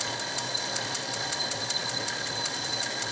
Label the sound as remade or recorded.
recorded